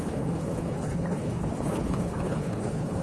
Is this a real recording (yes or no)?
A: no